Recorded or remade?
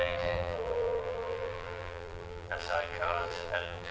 remade